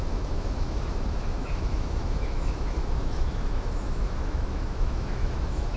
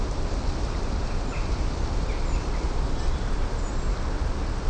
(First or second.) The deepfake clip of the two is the first